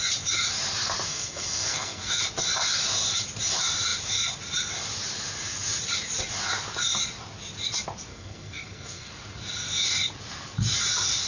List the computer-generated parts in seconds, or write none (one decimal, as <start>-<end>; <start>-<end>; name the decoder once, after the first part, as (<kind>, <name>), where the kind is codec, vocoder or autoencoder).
1.1-2.2 (codec, SNAC); 8.1-9.1